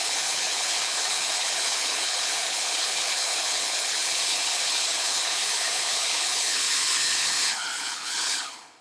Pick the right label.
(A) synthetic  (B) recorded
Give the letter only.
A